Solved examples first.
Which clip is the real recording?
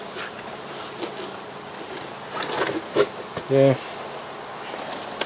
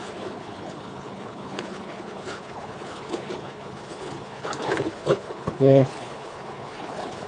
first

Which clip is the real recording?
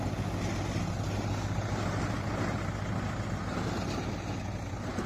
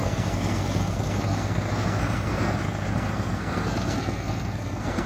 first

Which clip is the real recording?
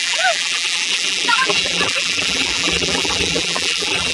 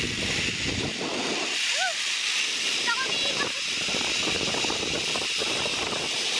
second